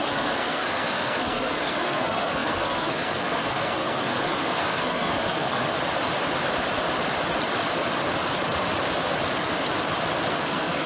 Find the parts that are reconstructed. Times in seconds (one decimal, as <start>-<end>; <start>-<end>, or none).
0.0-5.7; 10.3-10.9